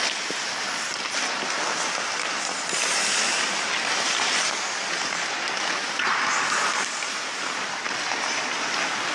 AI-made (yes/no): no